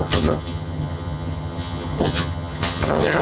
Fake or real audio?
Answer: fake